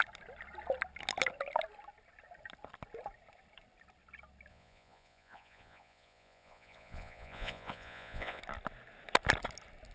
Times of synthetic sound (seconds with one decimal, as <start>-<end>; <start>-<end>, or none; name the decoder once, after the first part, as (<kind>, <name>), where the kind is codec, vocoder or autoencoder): 4.5-8.4 (vocoder, Vocos)